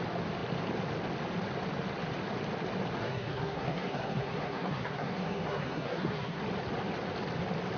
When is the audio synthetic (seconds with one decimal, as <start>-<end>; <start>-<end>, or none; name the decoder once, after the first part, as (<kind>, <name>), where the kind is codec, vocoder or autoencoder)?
3.0-6.4 (codec, SNAC)